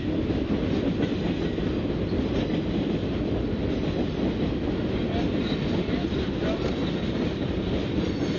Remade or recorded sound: recorded